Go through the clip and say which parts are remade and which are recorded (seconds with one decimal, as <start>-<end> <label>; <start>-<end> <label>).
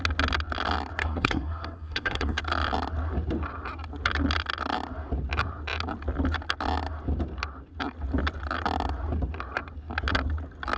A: 0.0-1.0 recorded; 1.0-2.4 remade; 2.4-10.8 recorded